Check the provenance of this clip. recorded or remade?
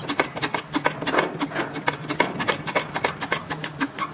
recorded